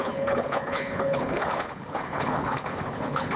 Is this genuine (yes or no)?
no